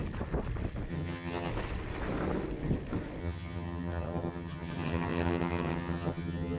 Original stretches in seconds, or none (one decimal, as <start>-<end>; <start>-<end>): 0.0-0.9; 1.5-3.2